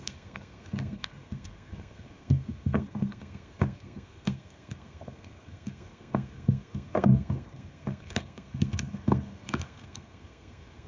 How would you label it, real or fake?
fake